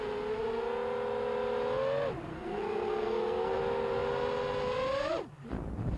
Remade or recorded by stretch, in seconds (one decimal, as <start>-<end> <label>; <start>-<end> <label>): 0.0-2.3 recorded; 2.3-3.6 remade; 3.6-6.0 recorded